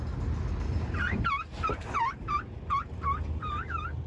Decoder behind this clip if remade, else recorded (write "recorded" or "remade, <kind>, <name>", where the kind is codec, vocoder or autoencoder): recorded